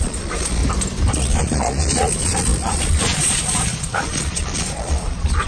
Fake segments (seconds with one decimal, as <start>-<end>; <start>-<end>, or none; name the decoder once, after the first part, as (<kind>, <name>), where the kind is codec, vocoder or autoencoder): 0.0-0.6 (vocoder, Vocos); 1.1-5.5